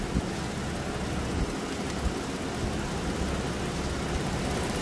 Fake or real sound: real